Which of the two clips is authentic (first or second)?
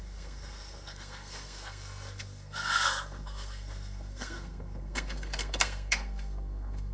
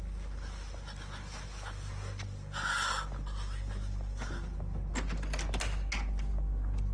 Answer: second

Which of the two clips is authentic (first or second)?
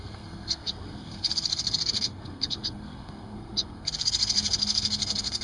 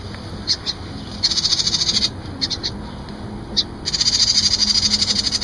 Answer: second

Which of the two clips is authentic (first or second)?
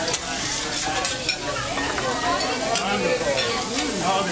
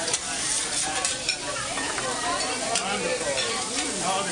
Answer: first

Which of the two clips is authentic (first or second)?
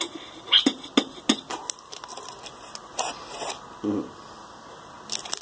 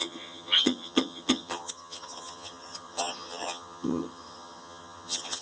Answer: first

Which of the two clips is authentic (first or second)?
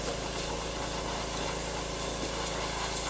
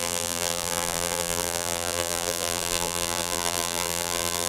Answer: first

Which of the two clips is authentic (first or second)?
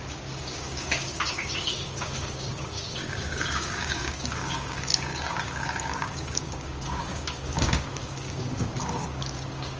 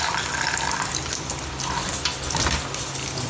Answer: second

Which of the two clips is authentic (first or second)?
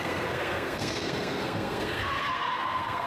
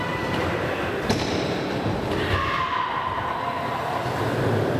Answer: second